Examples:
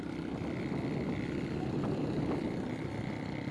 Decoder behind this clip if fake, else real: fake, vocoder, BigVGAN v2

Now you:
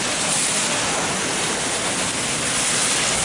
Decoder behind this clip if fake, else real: real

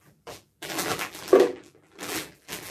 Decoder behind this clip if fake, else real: fake, vocoder, BigVGAN v2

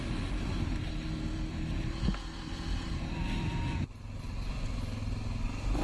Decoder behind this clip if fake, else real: real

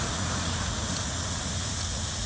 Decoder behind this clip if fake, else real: fake, vocoder, Vocos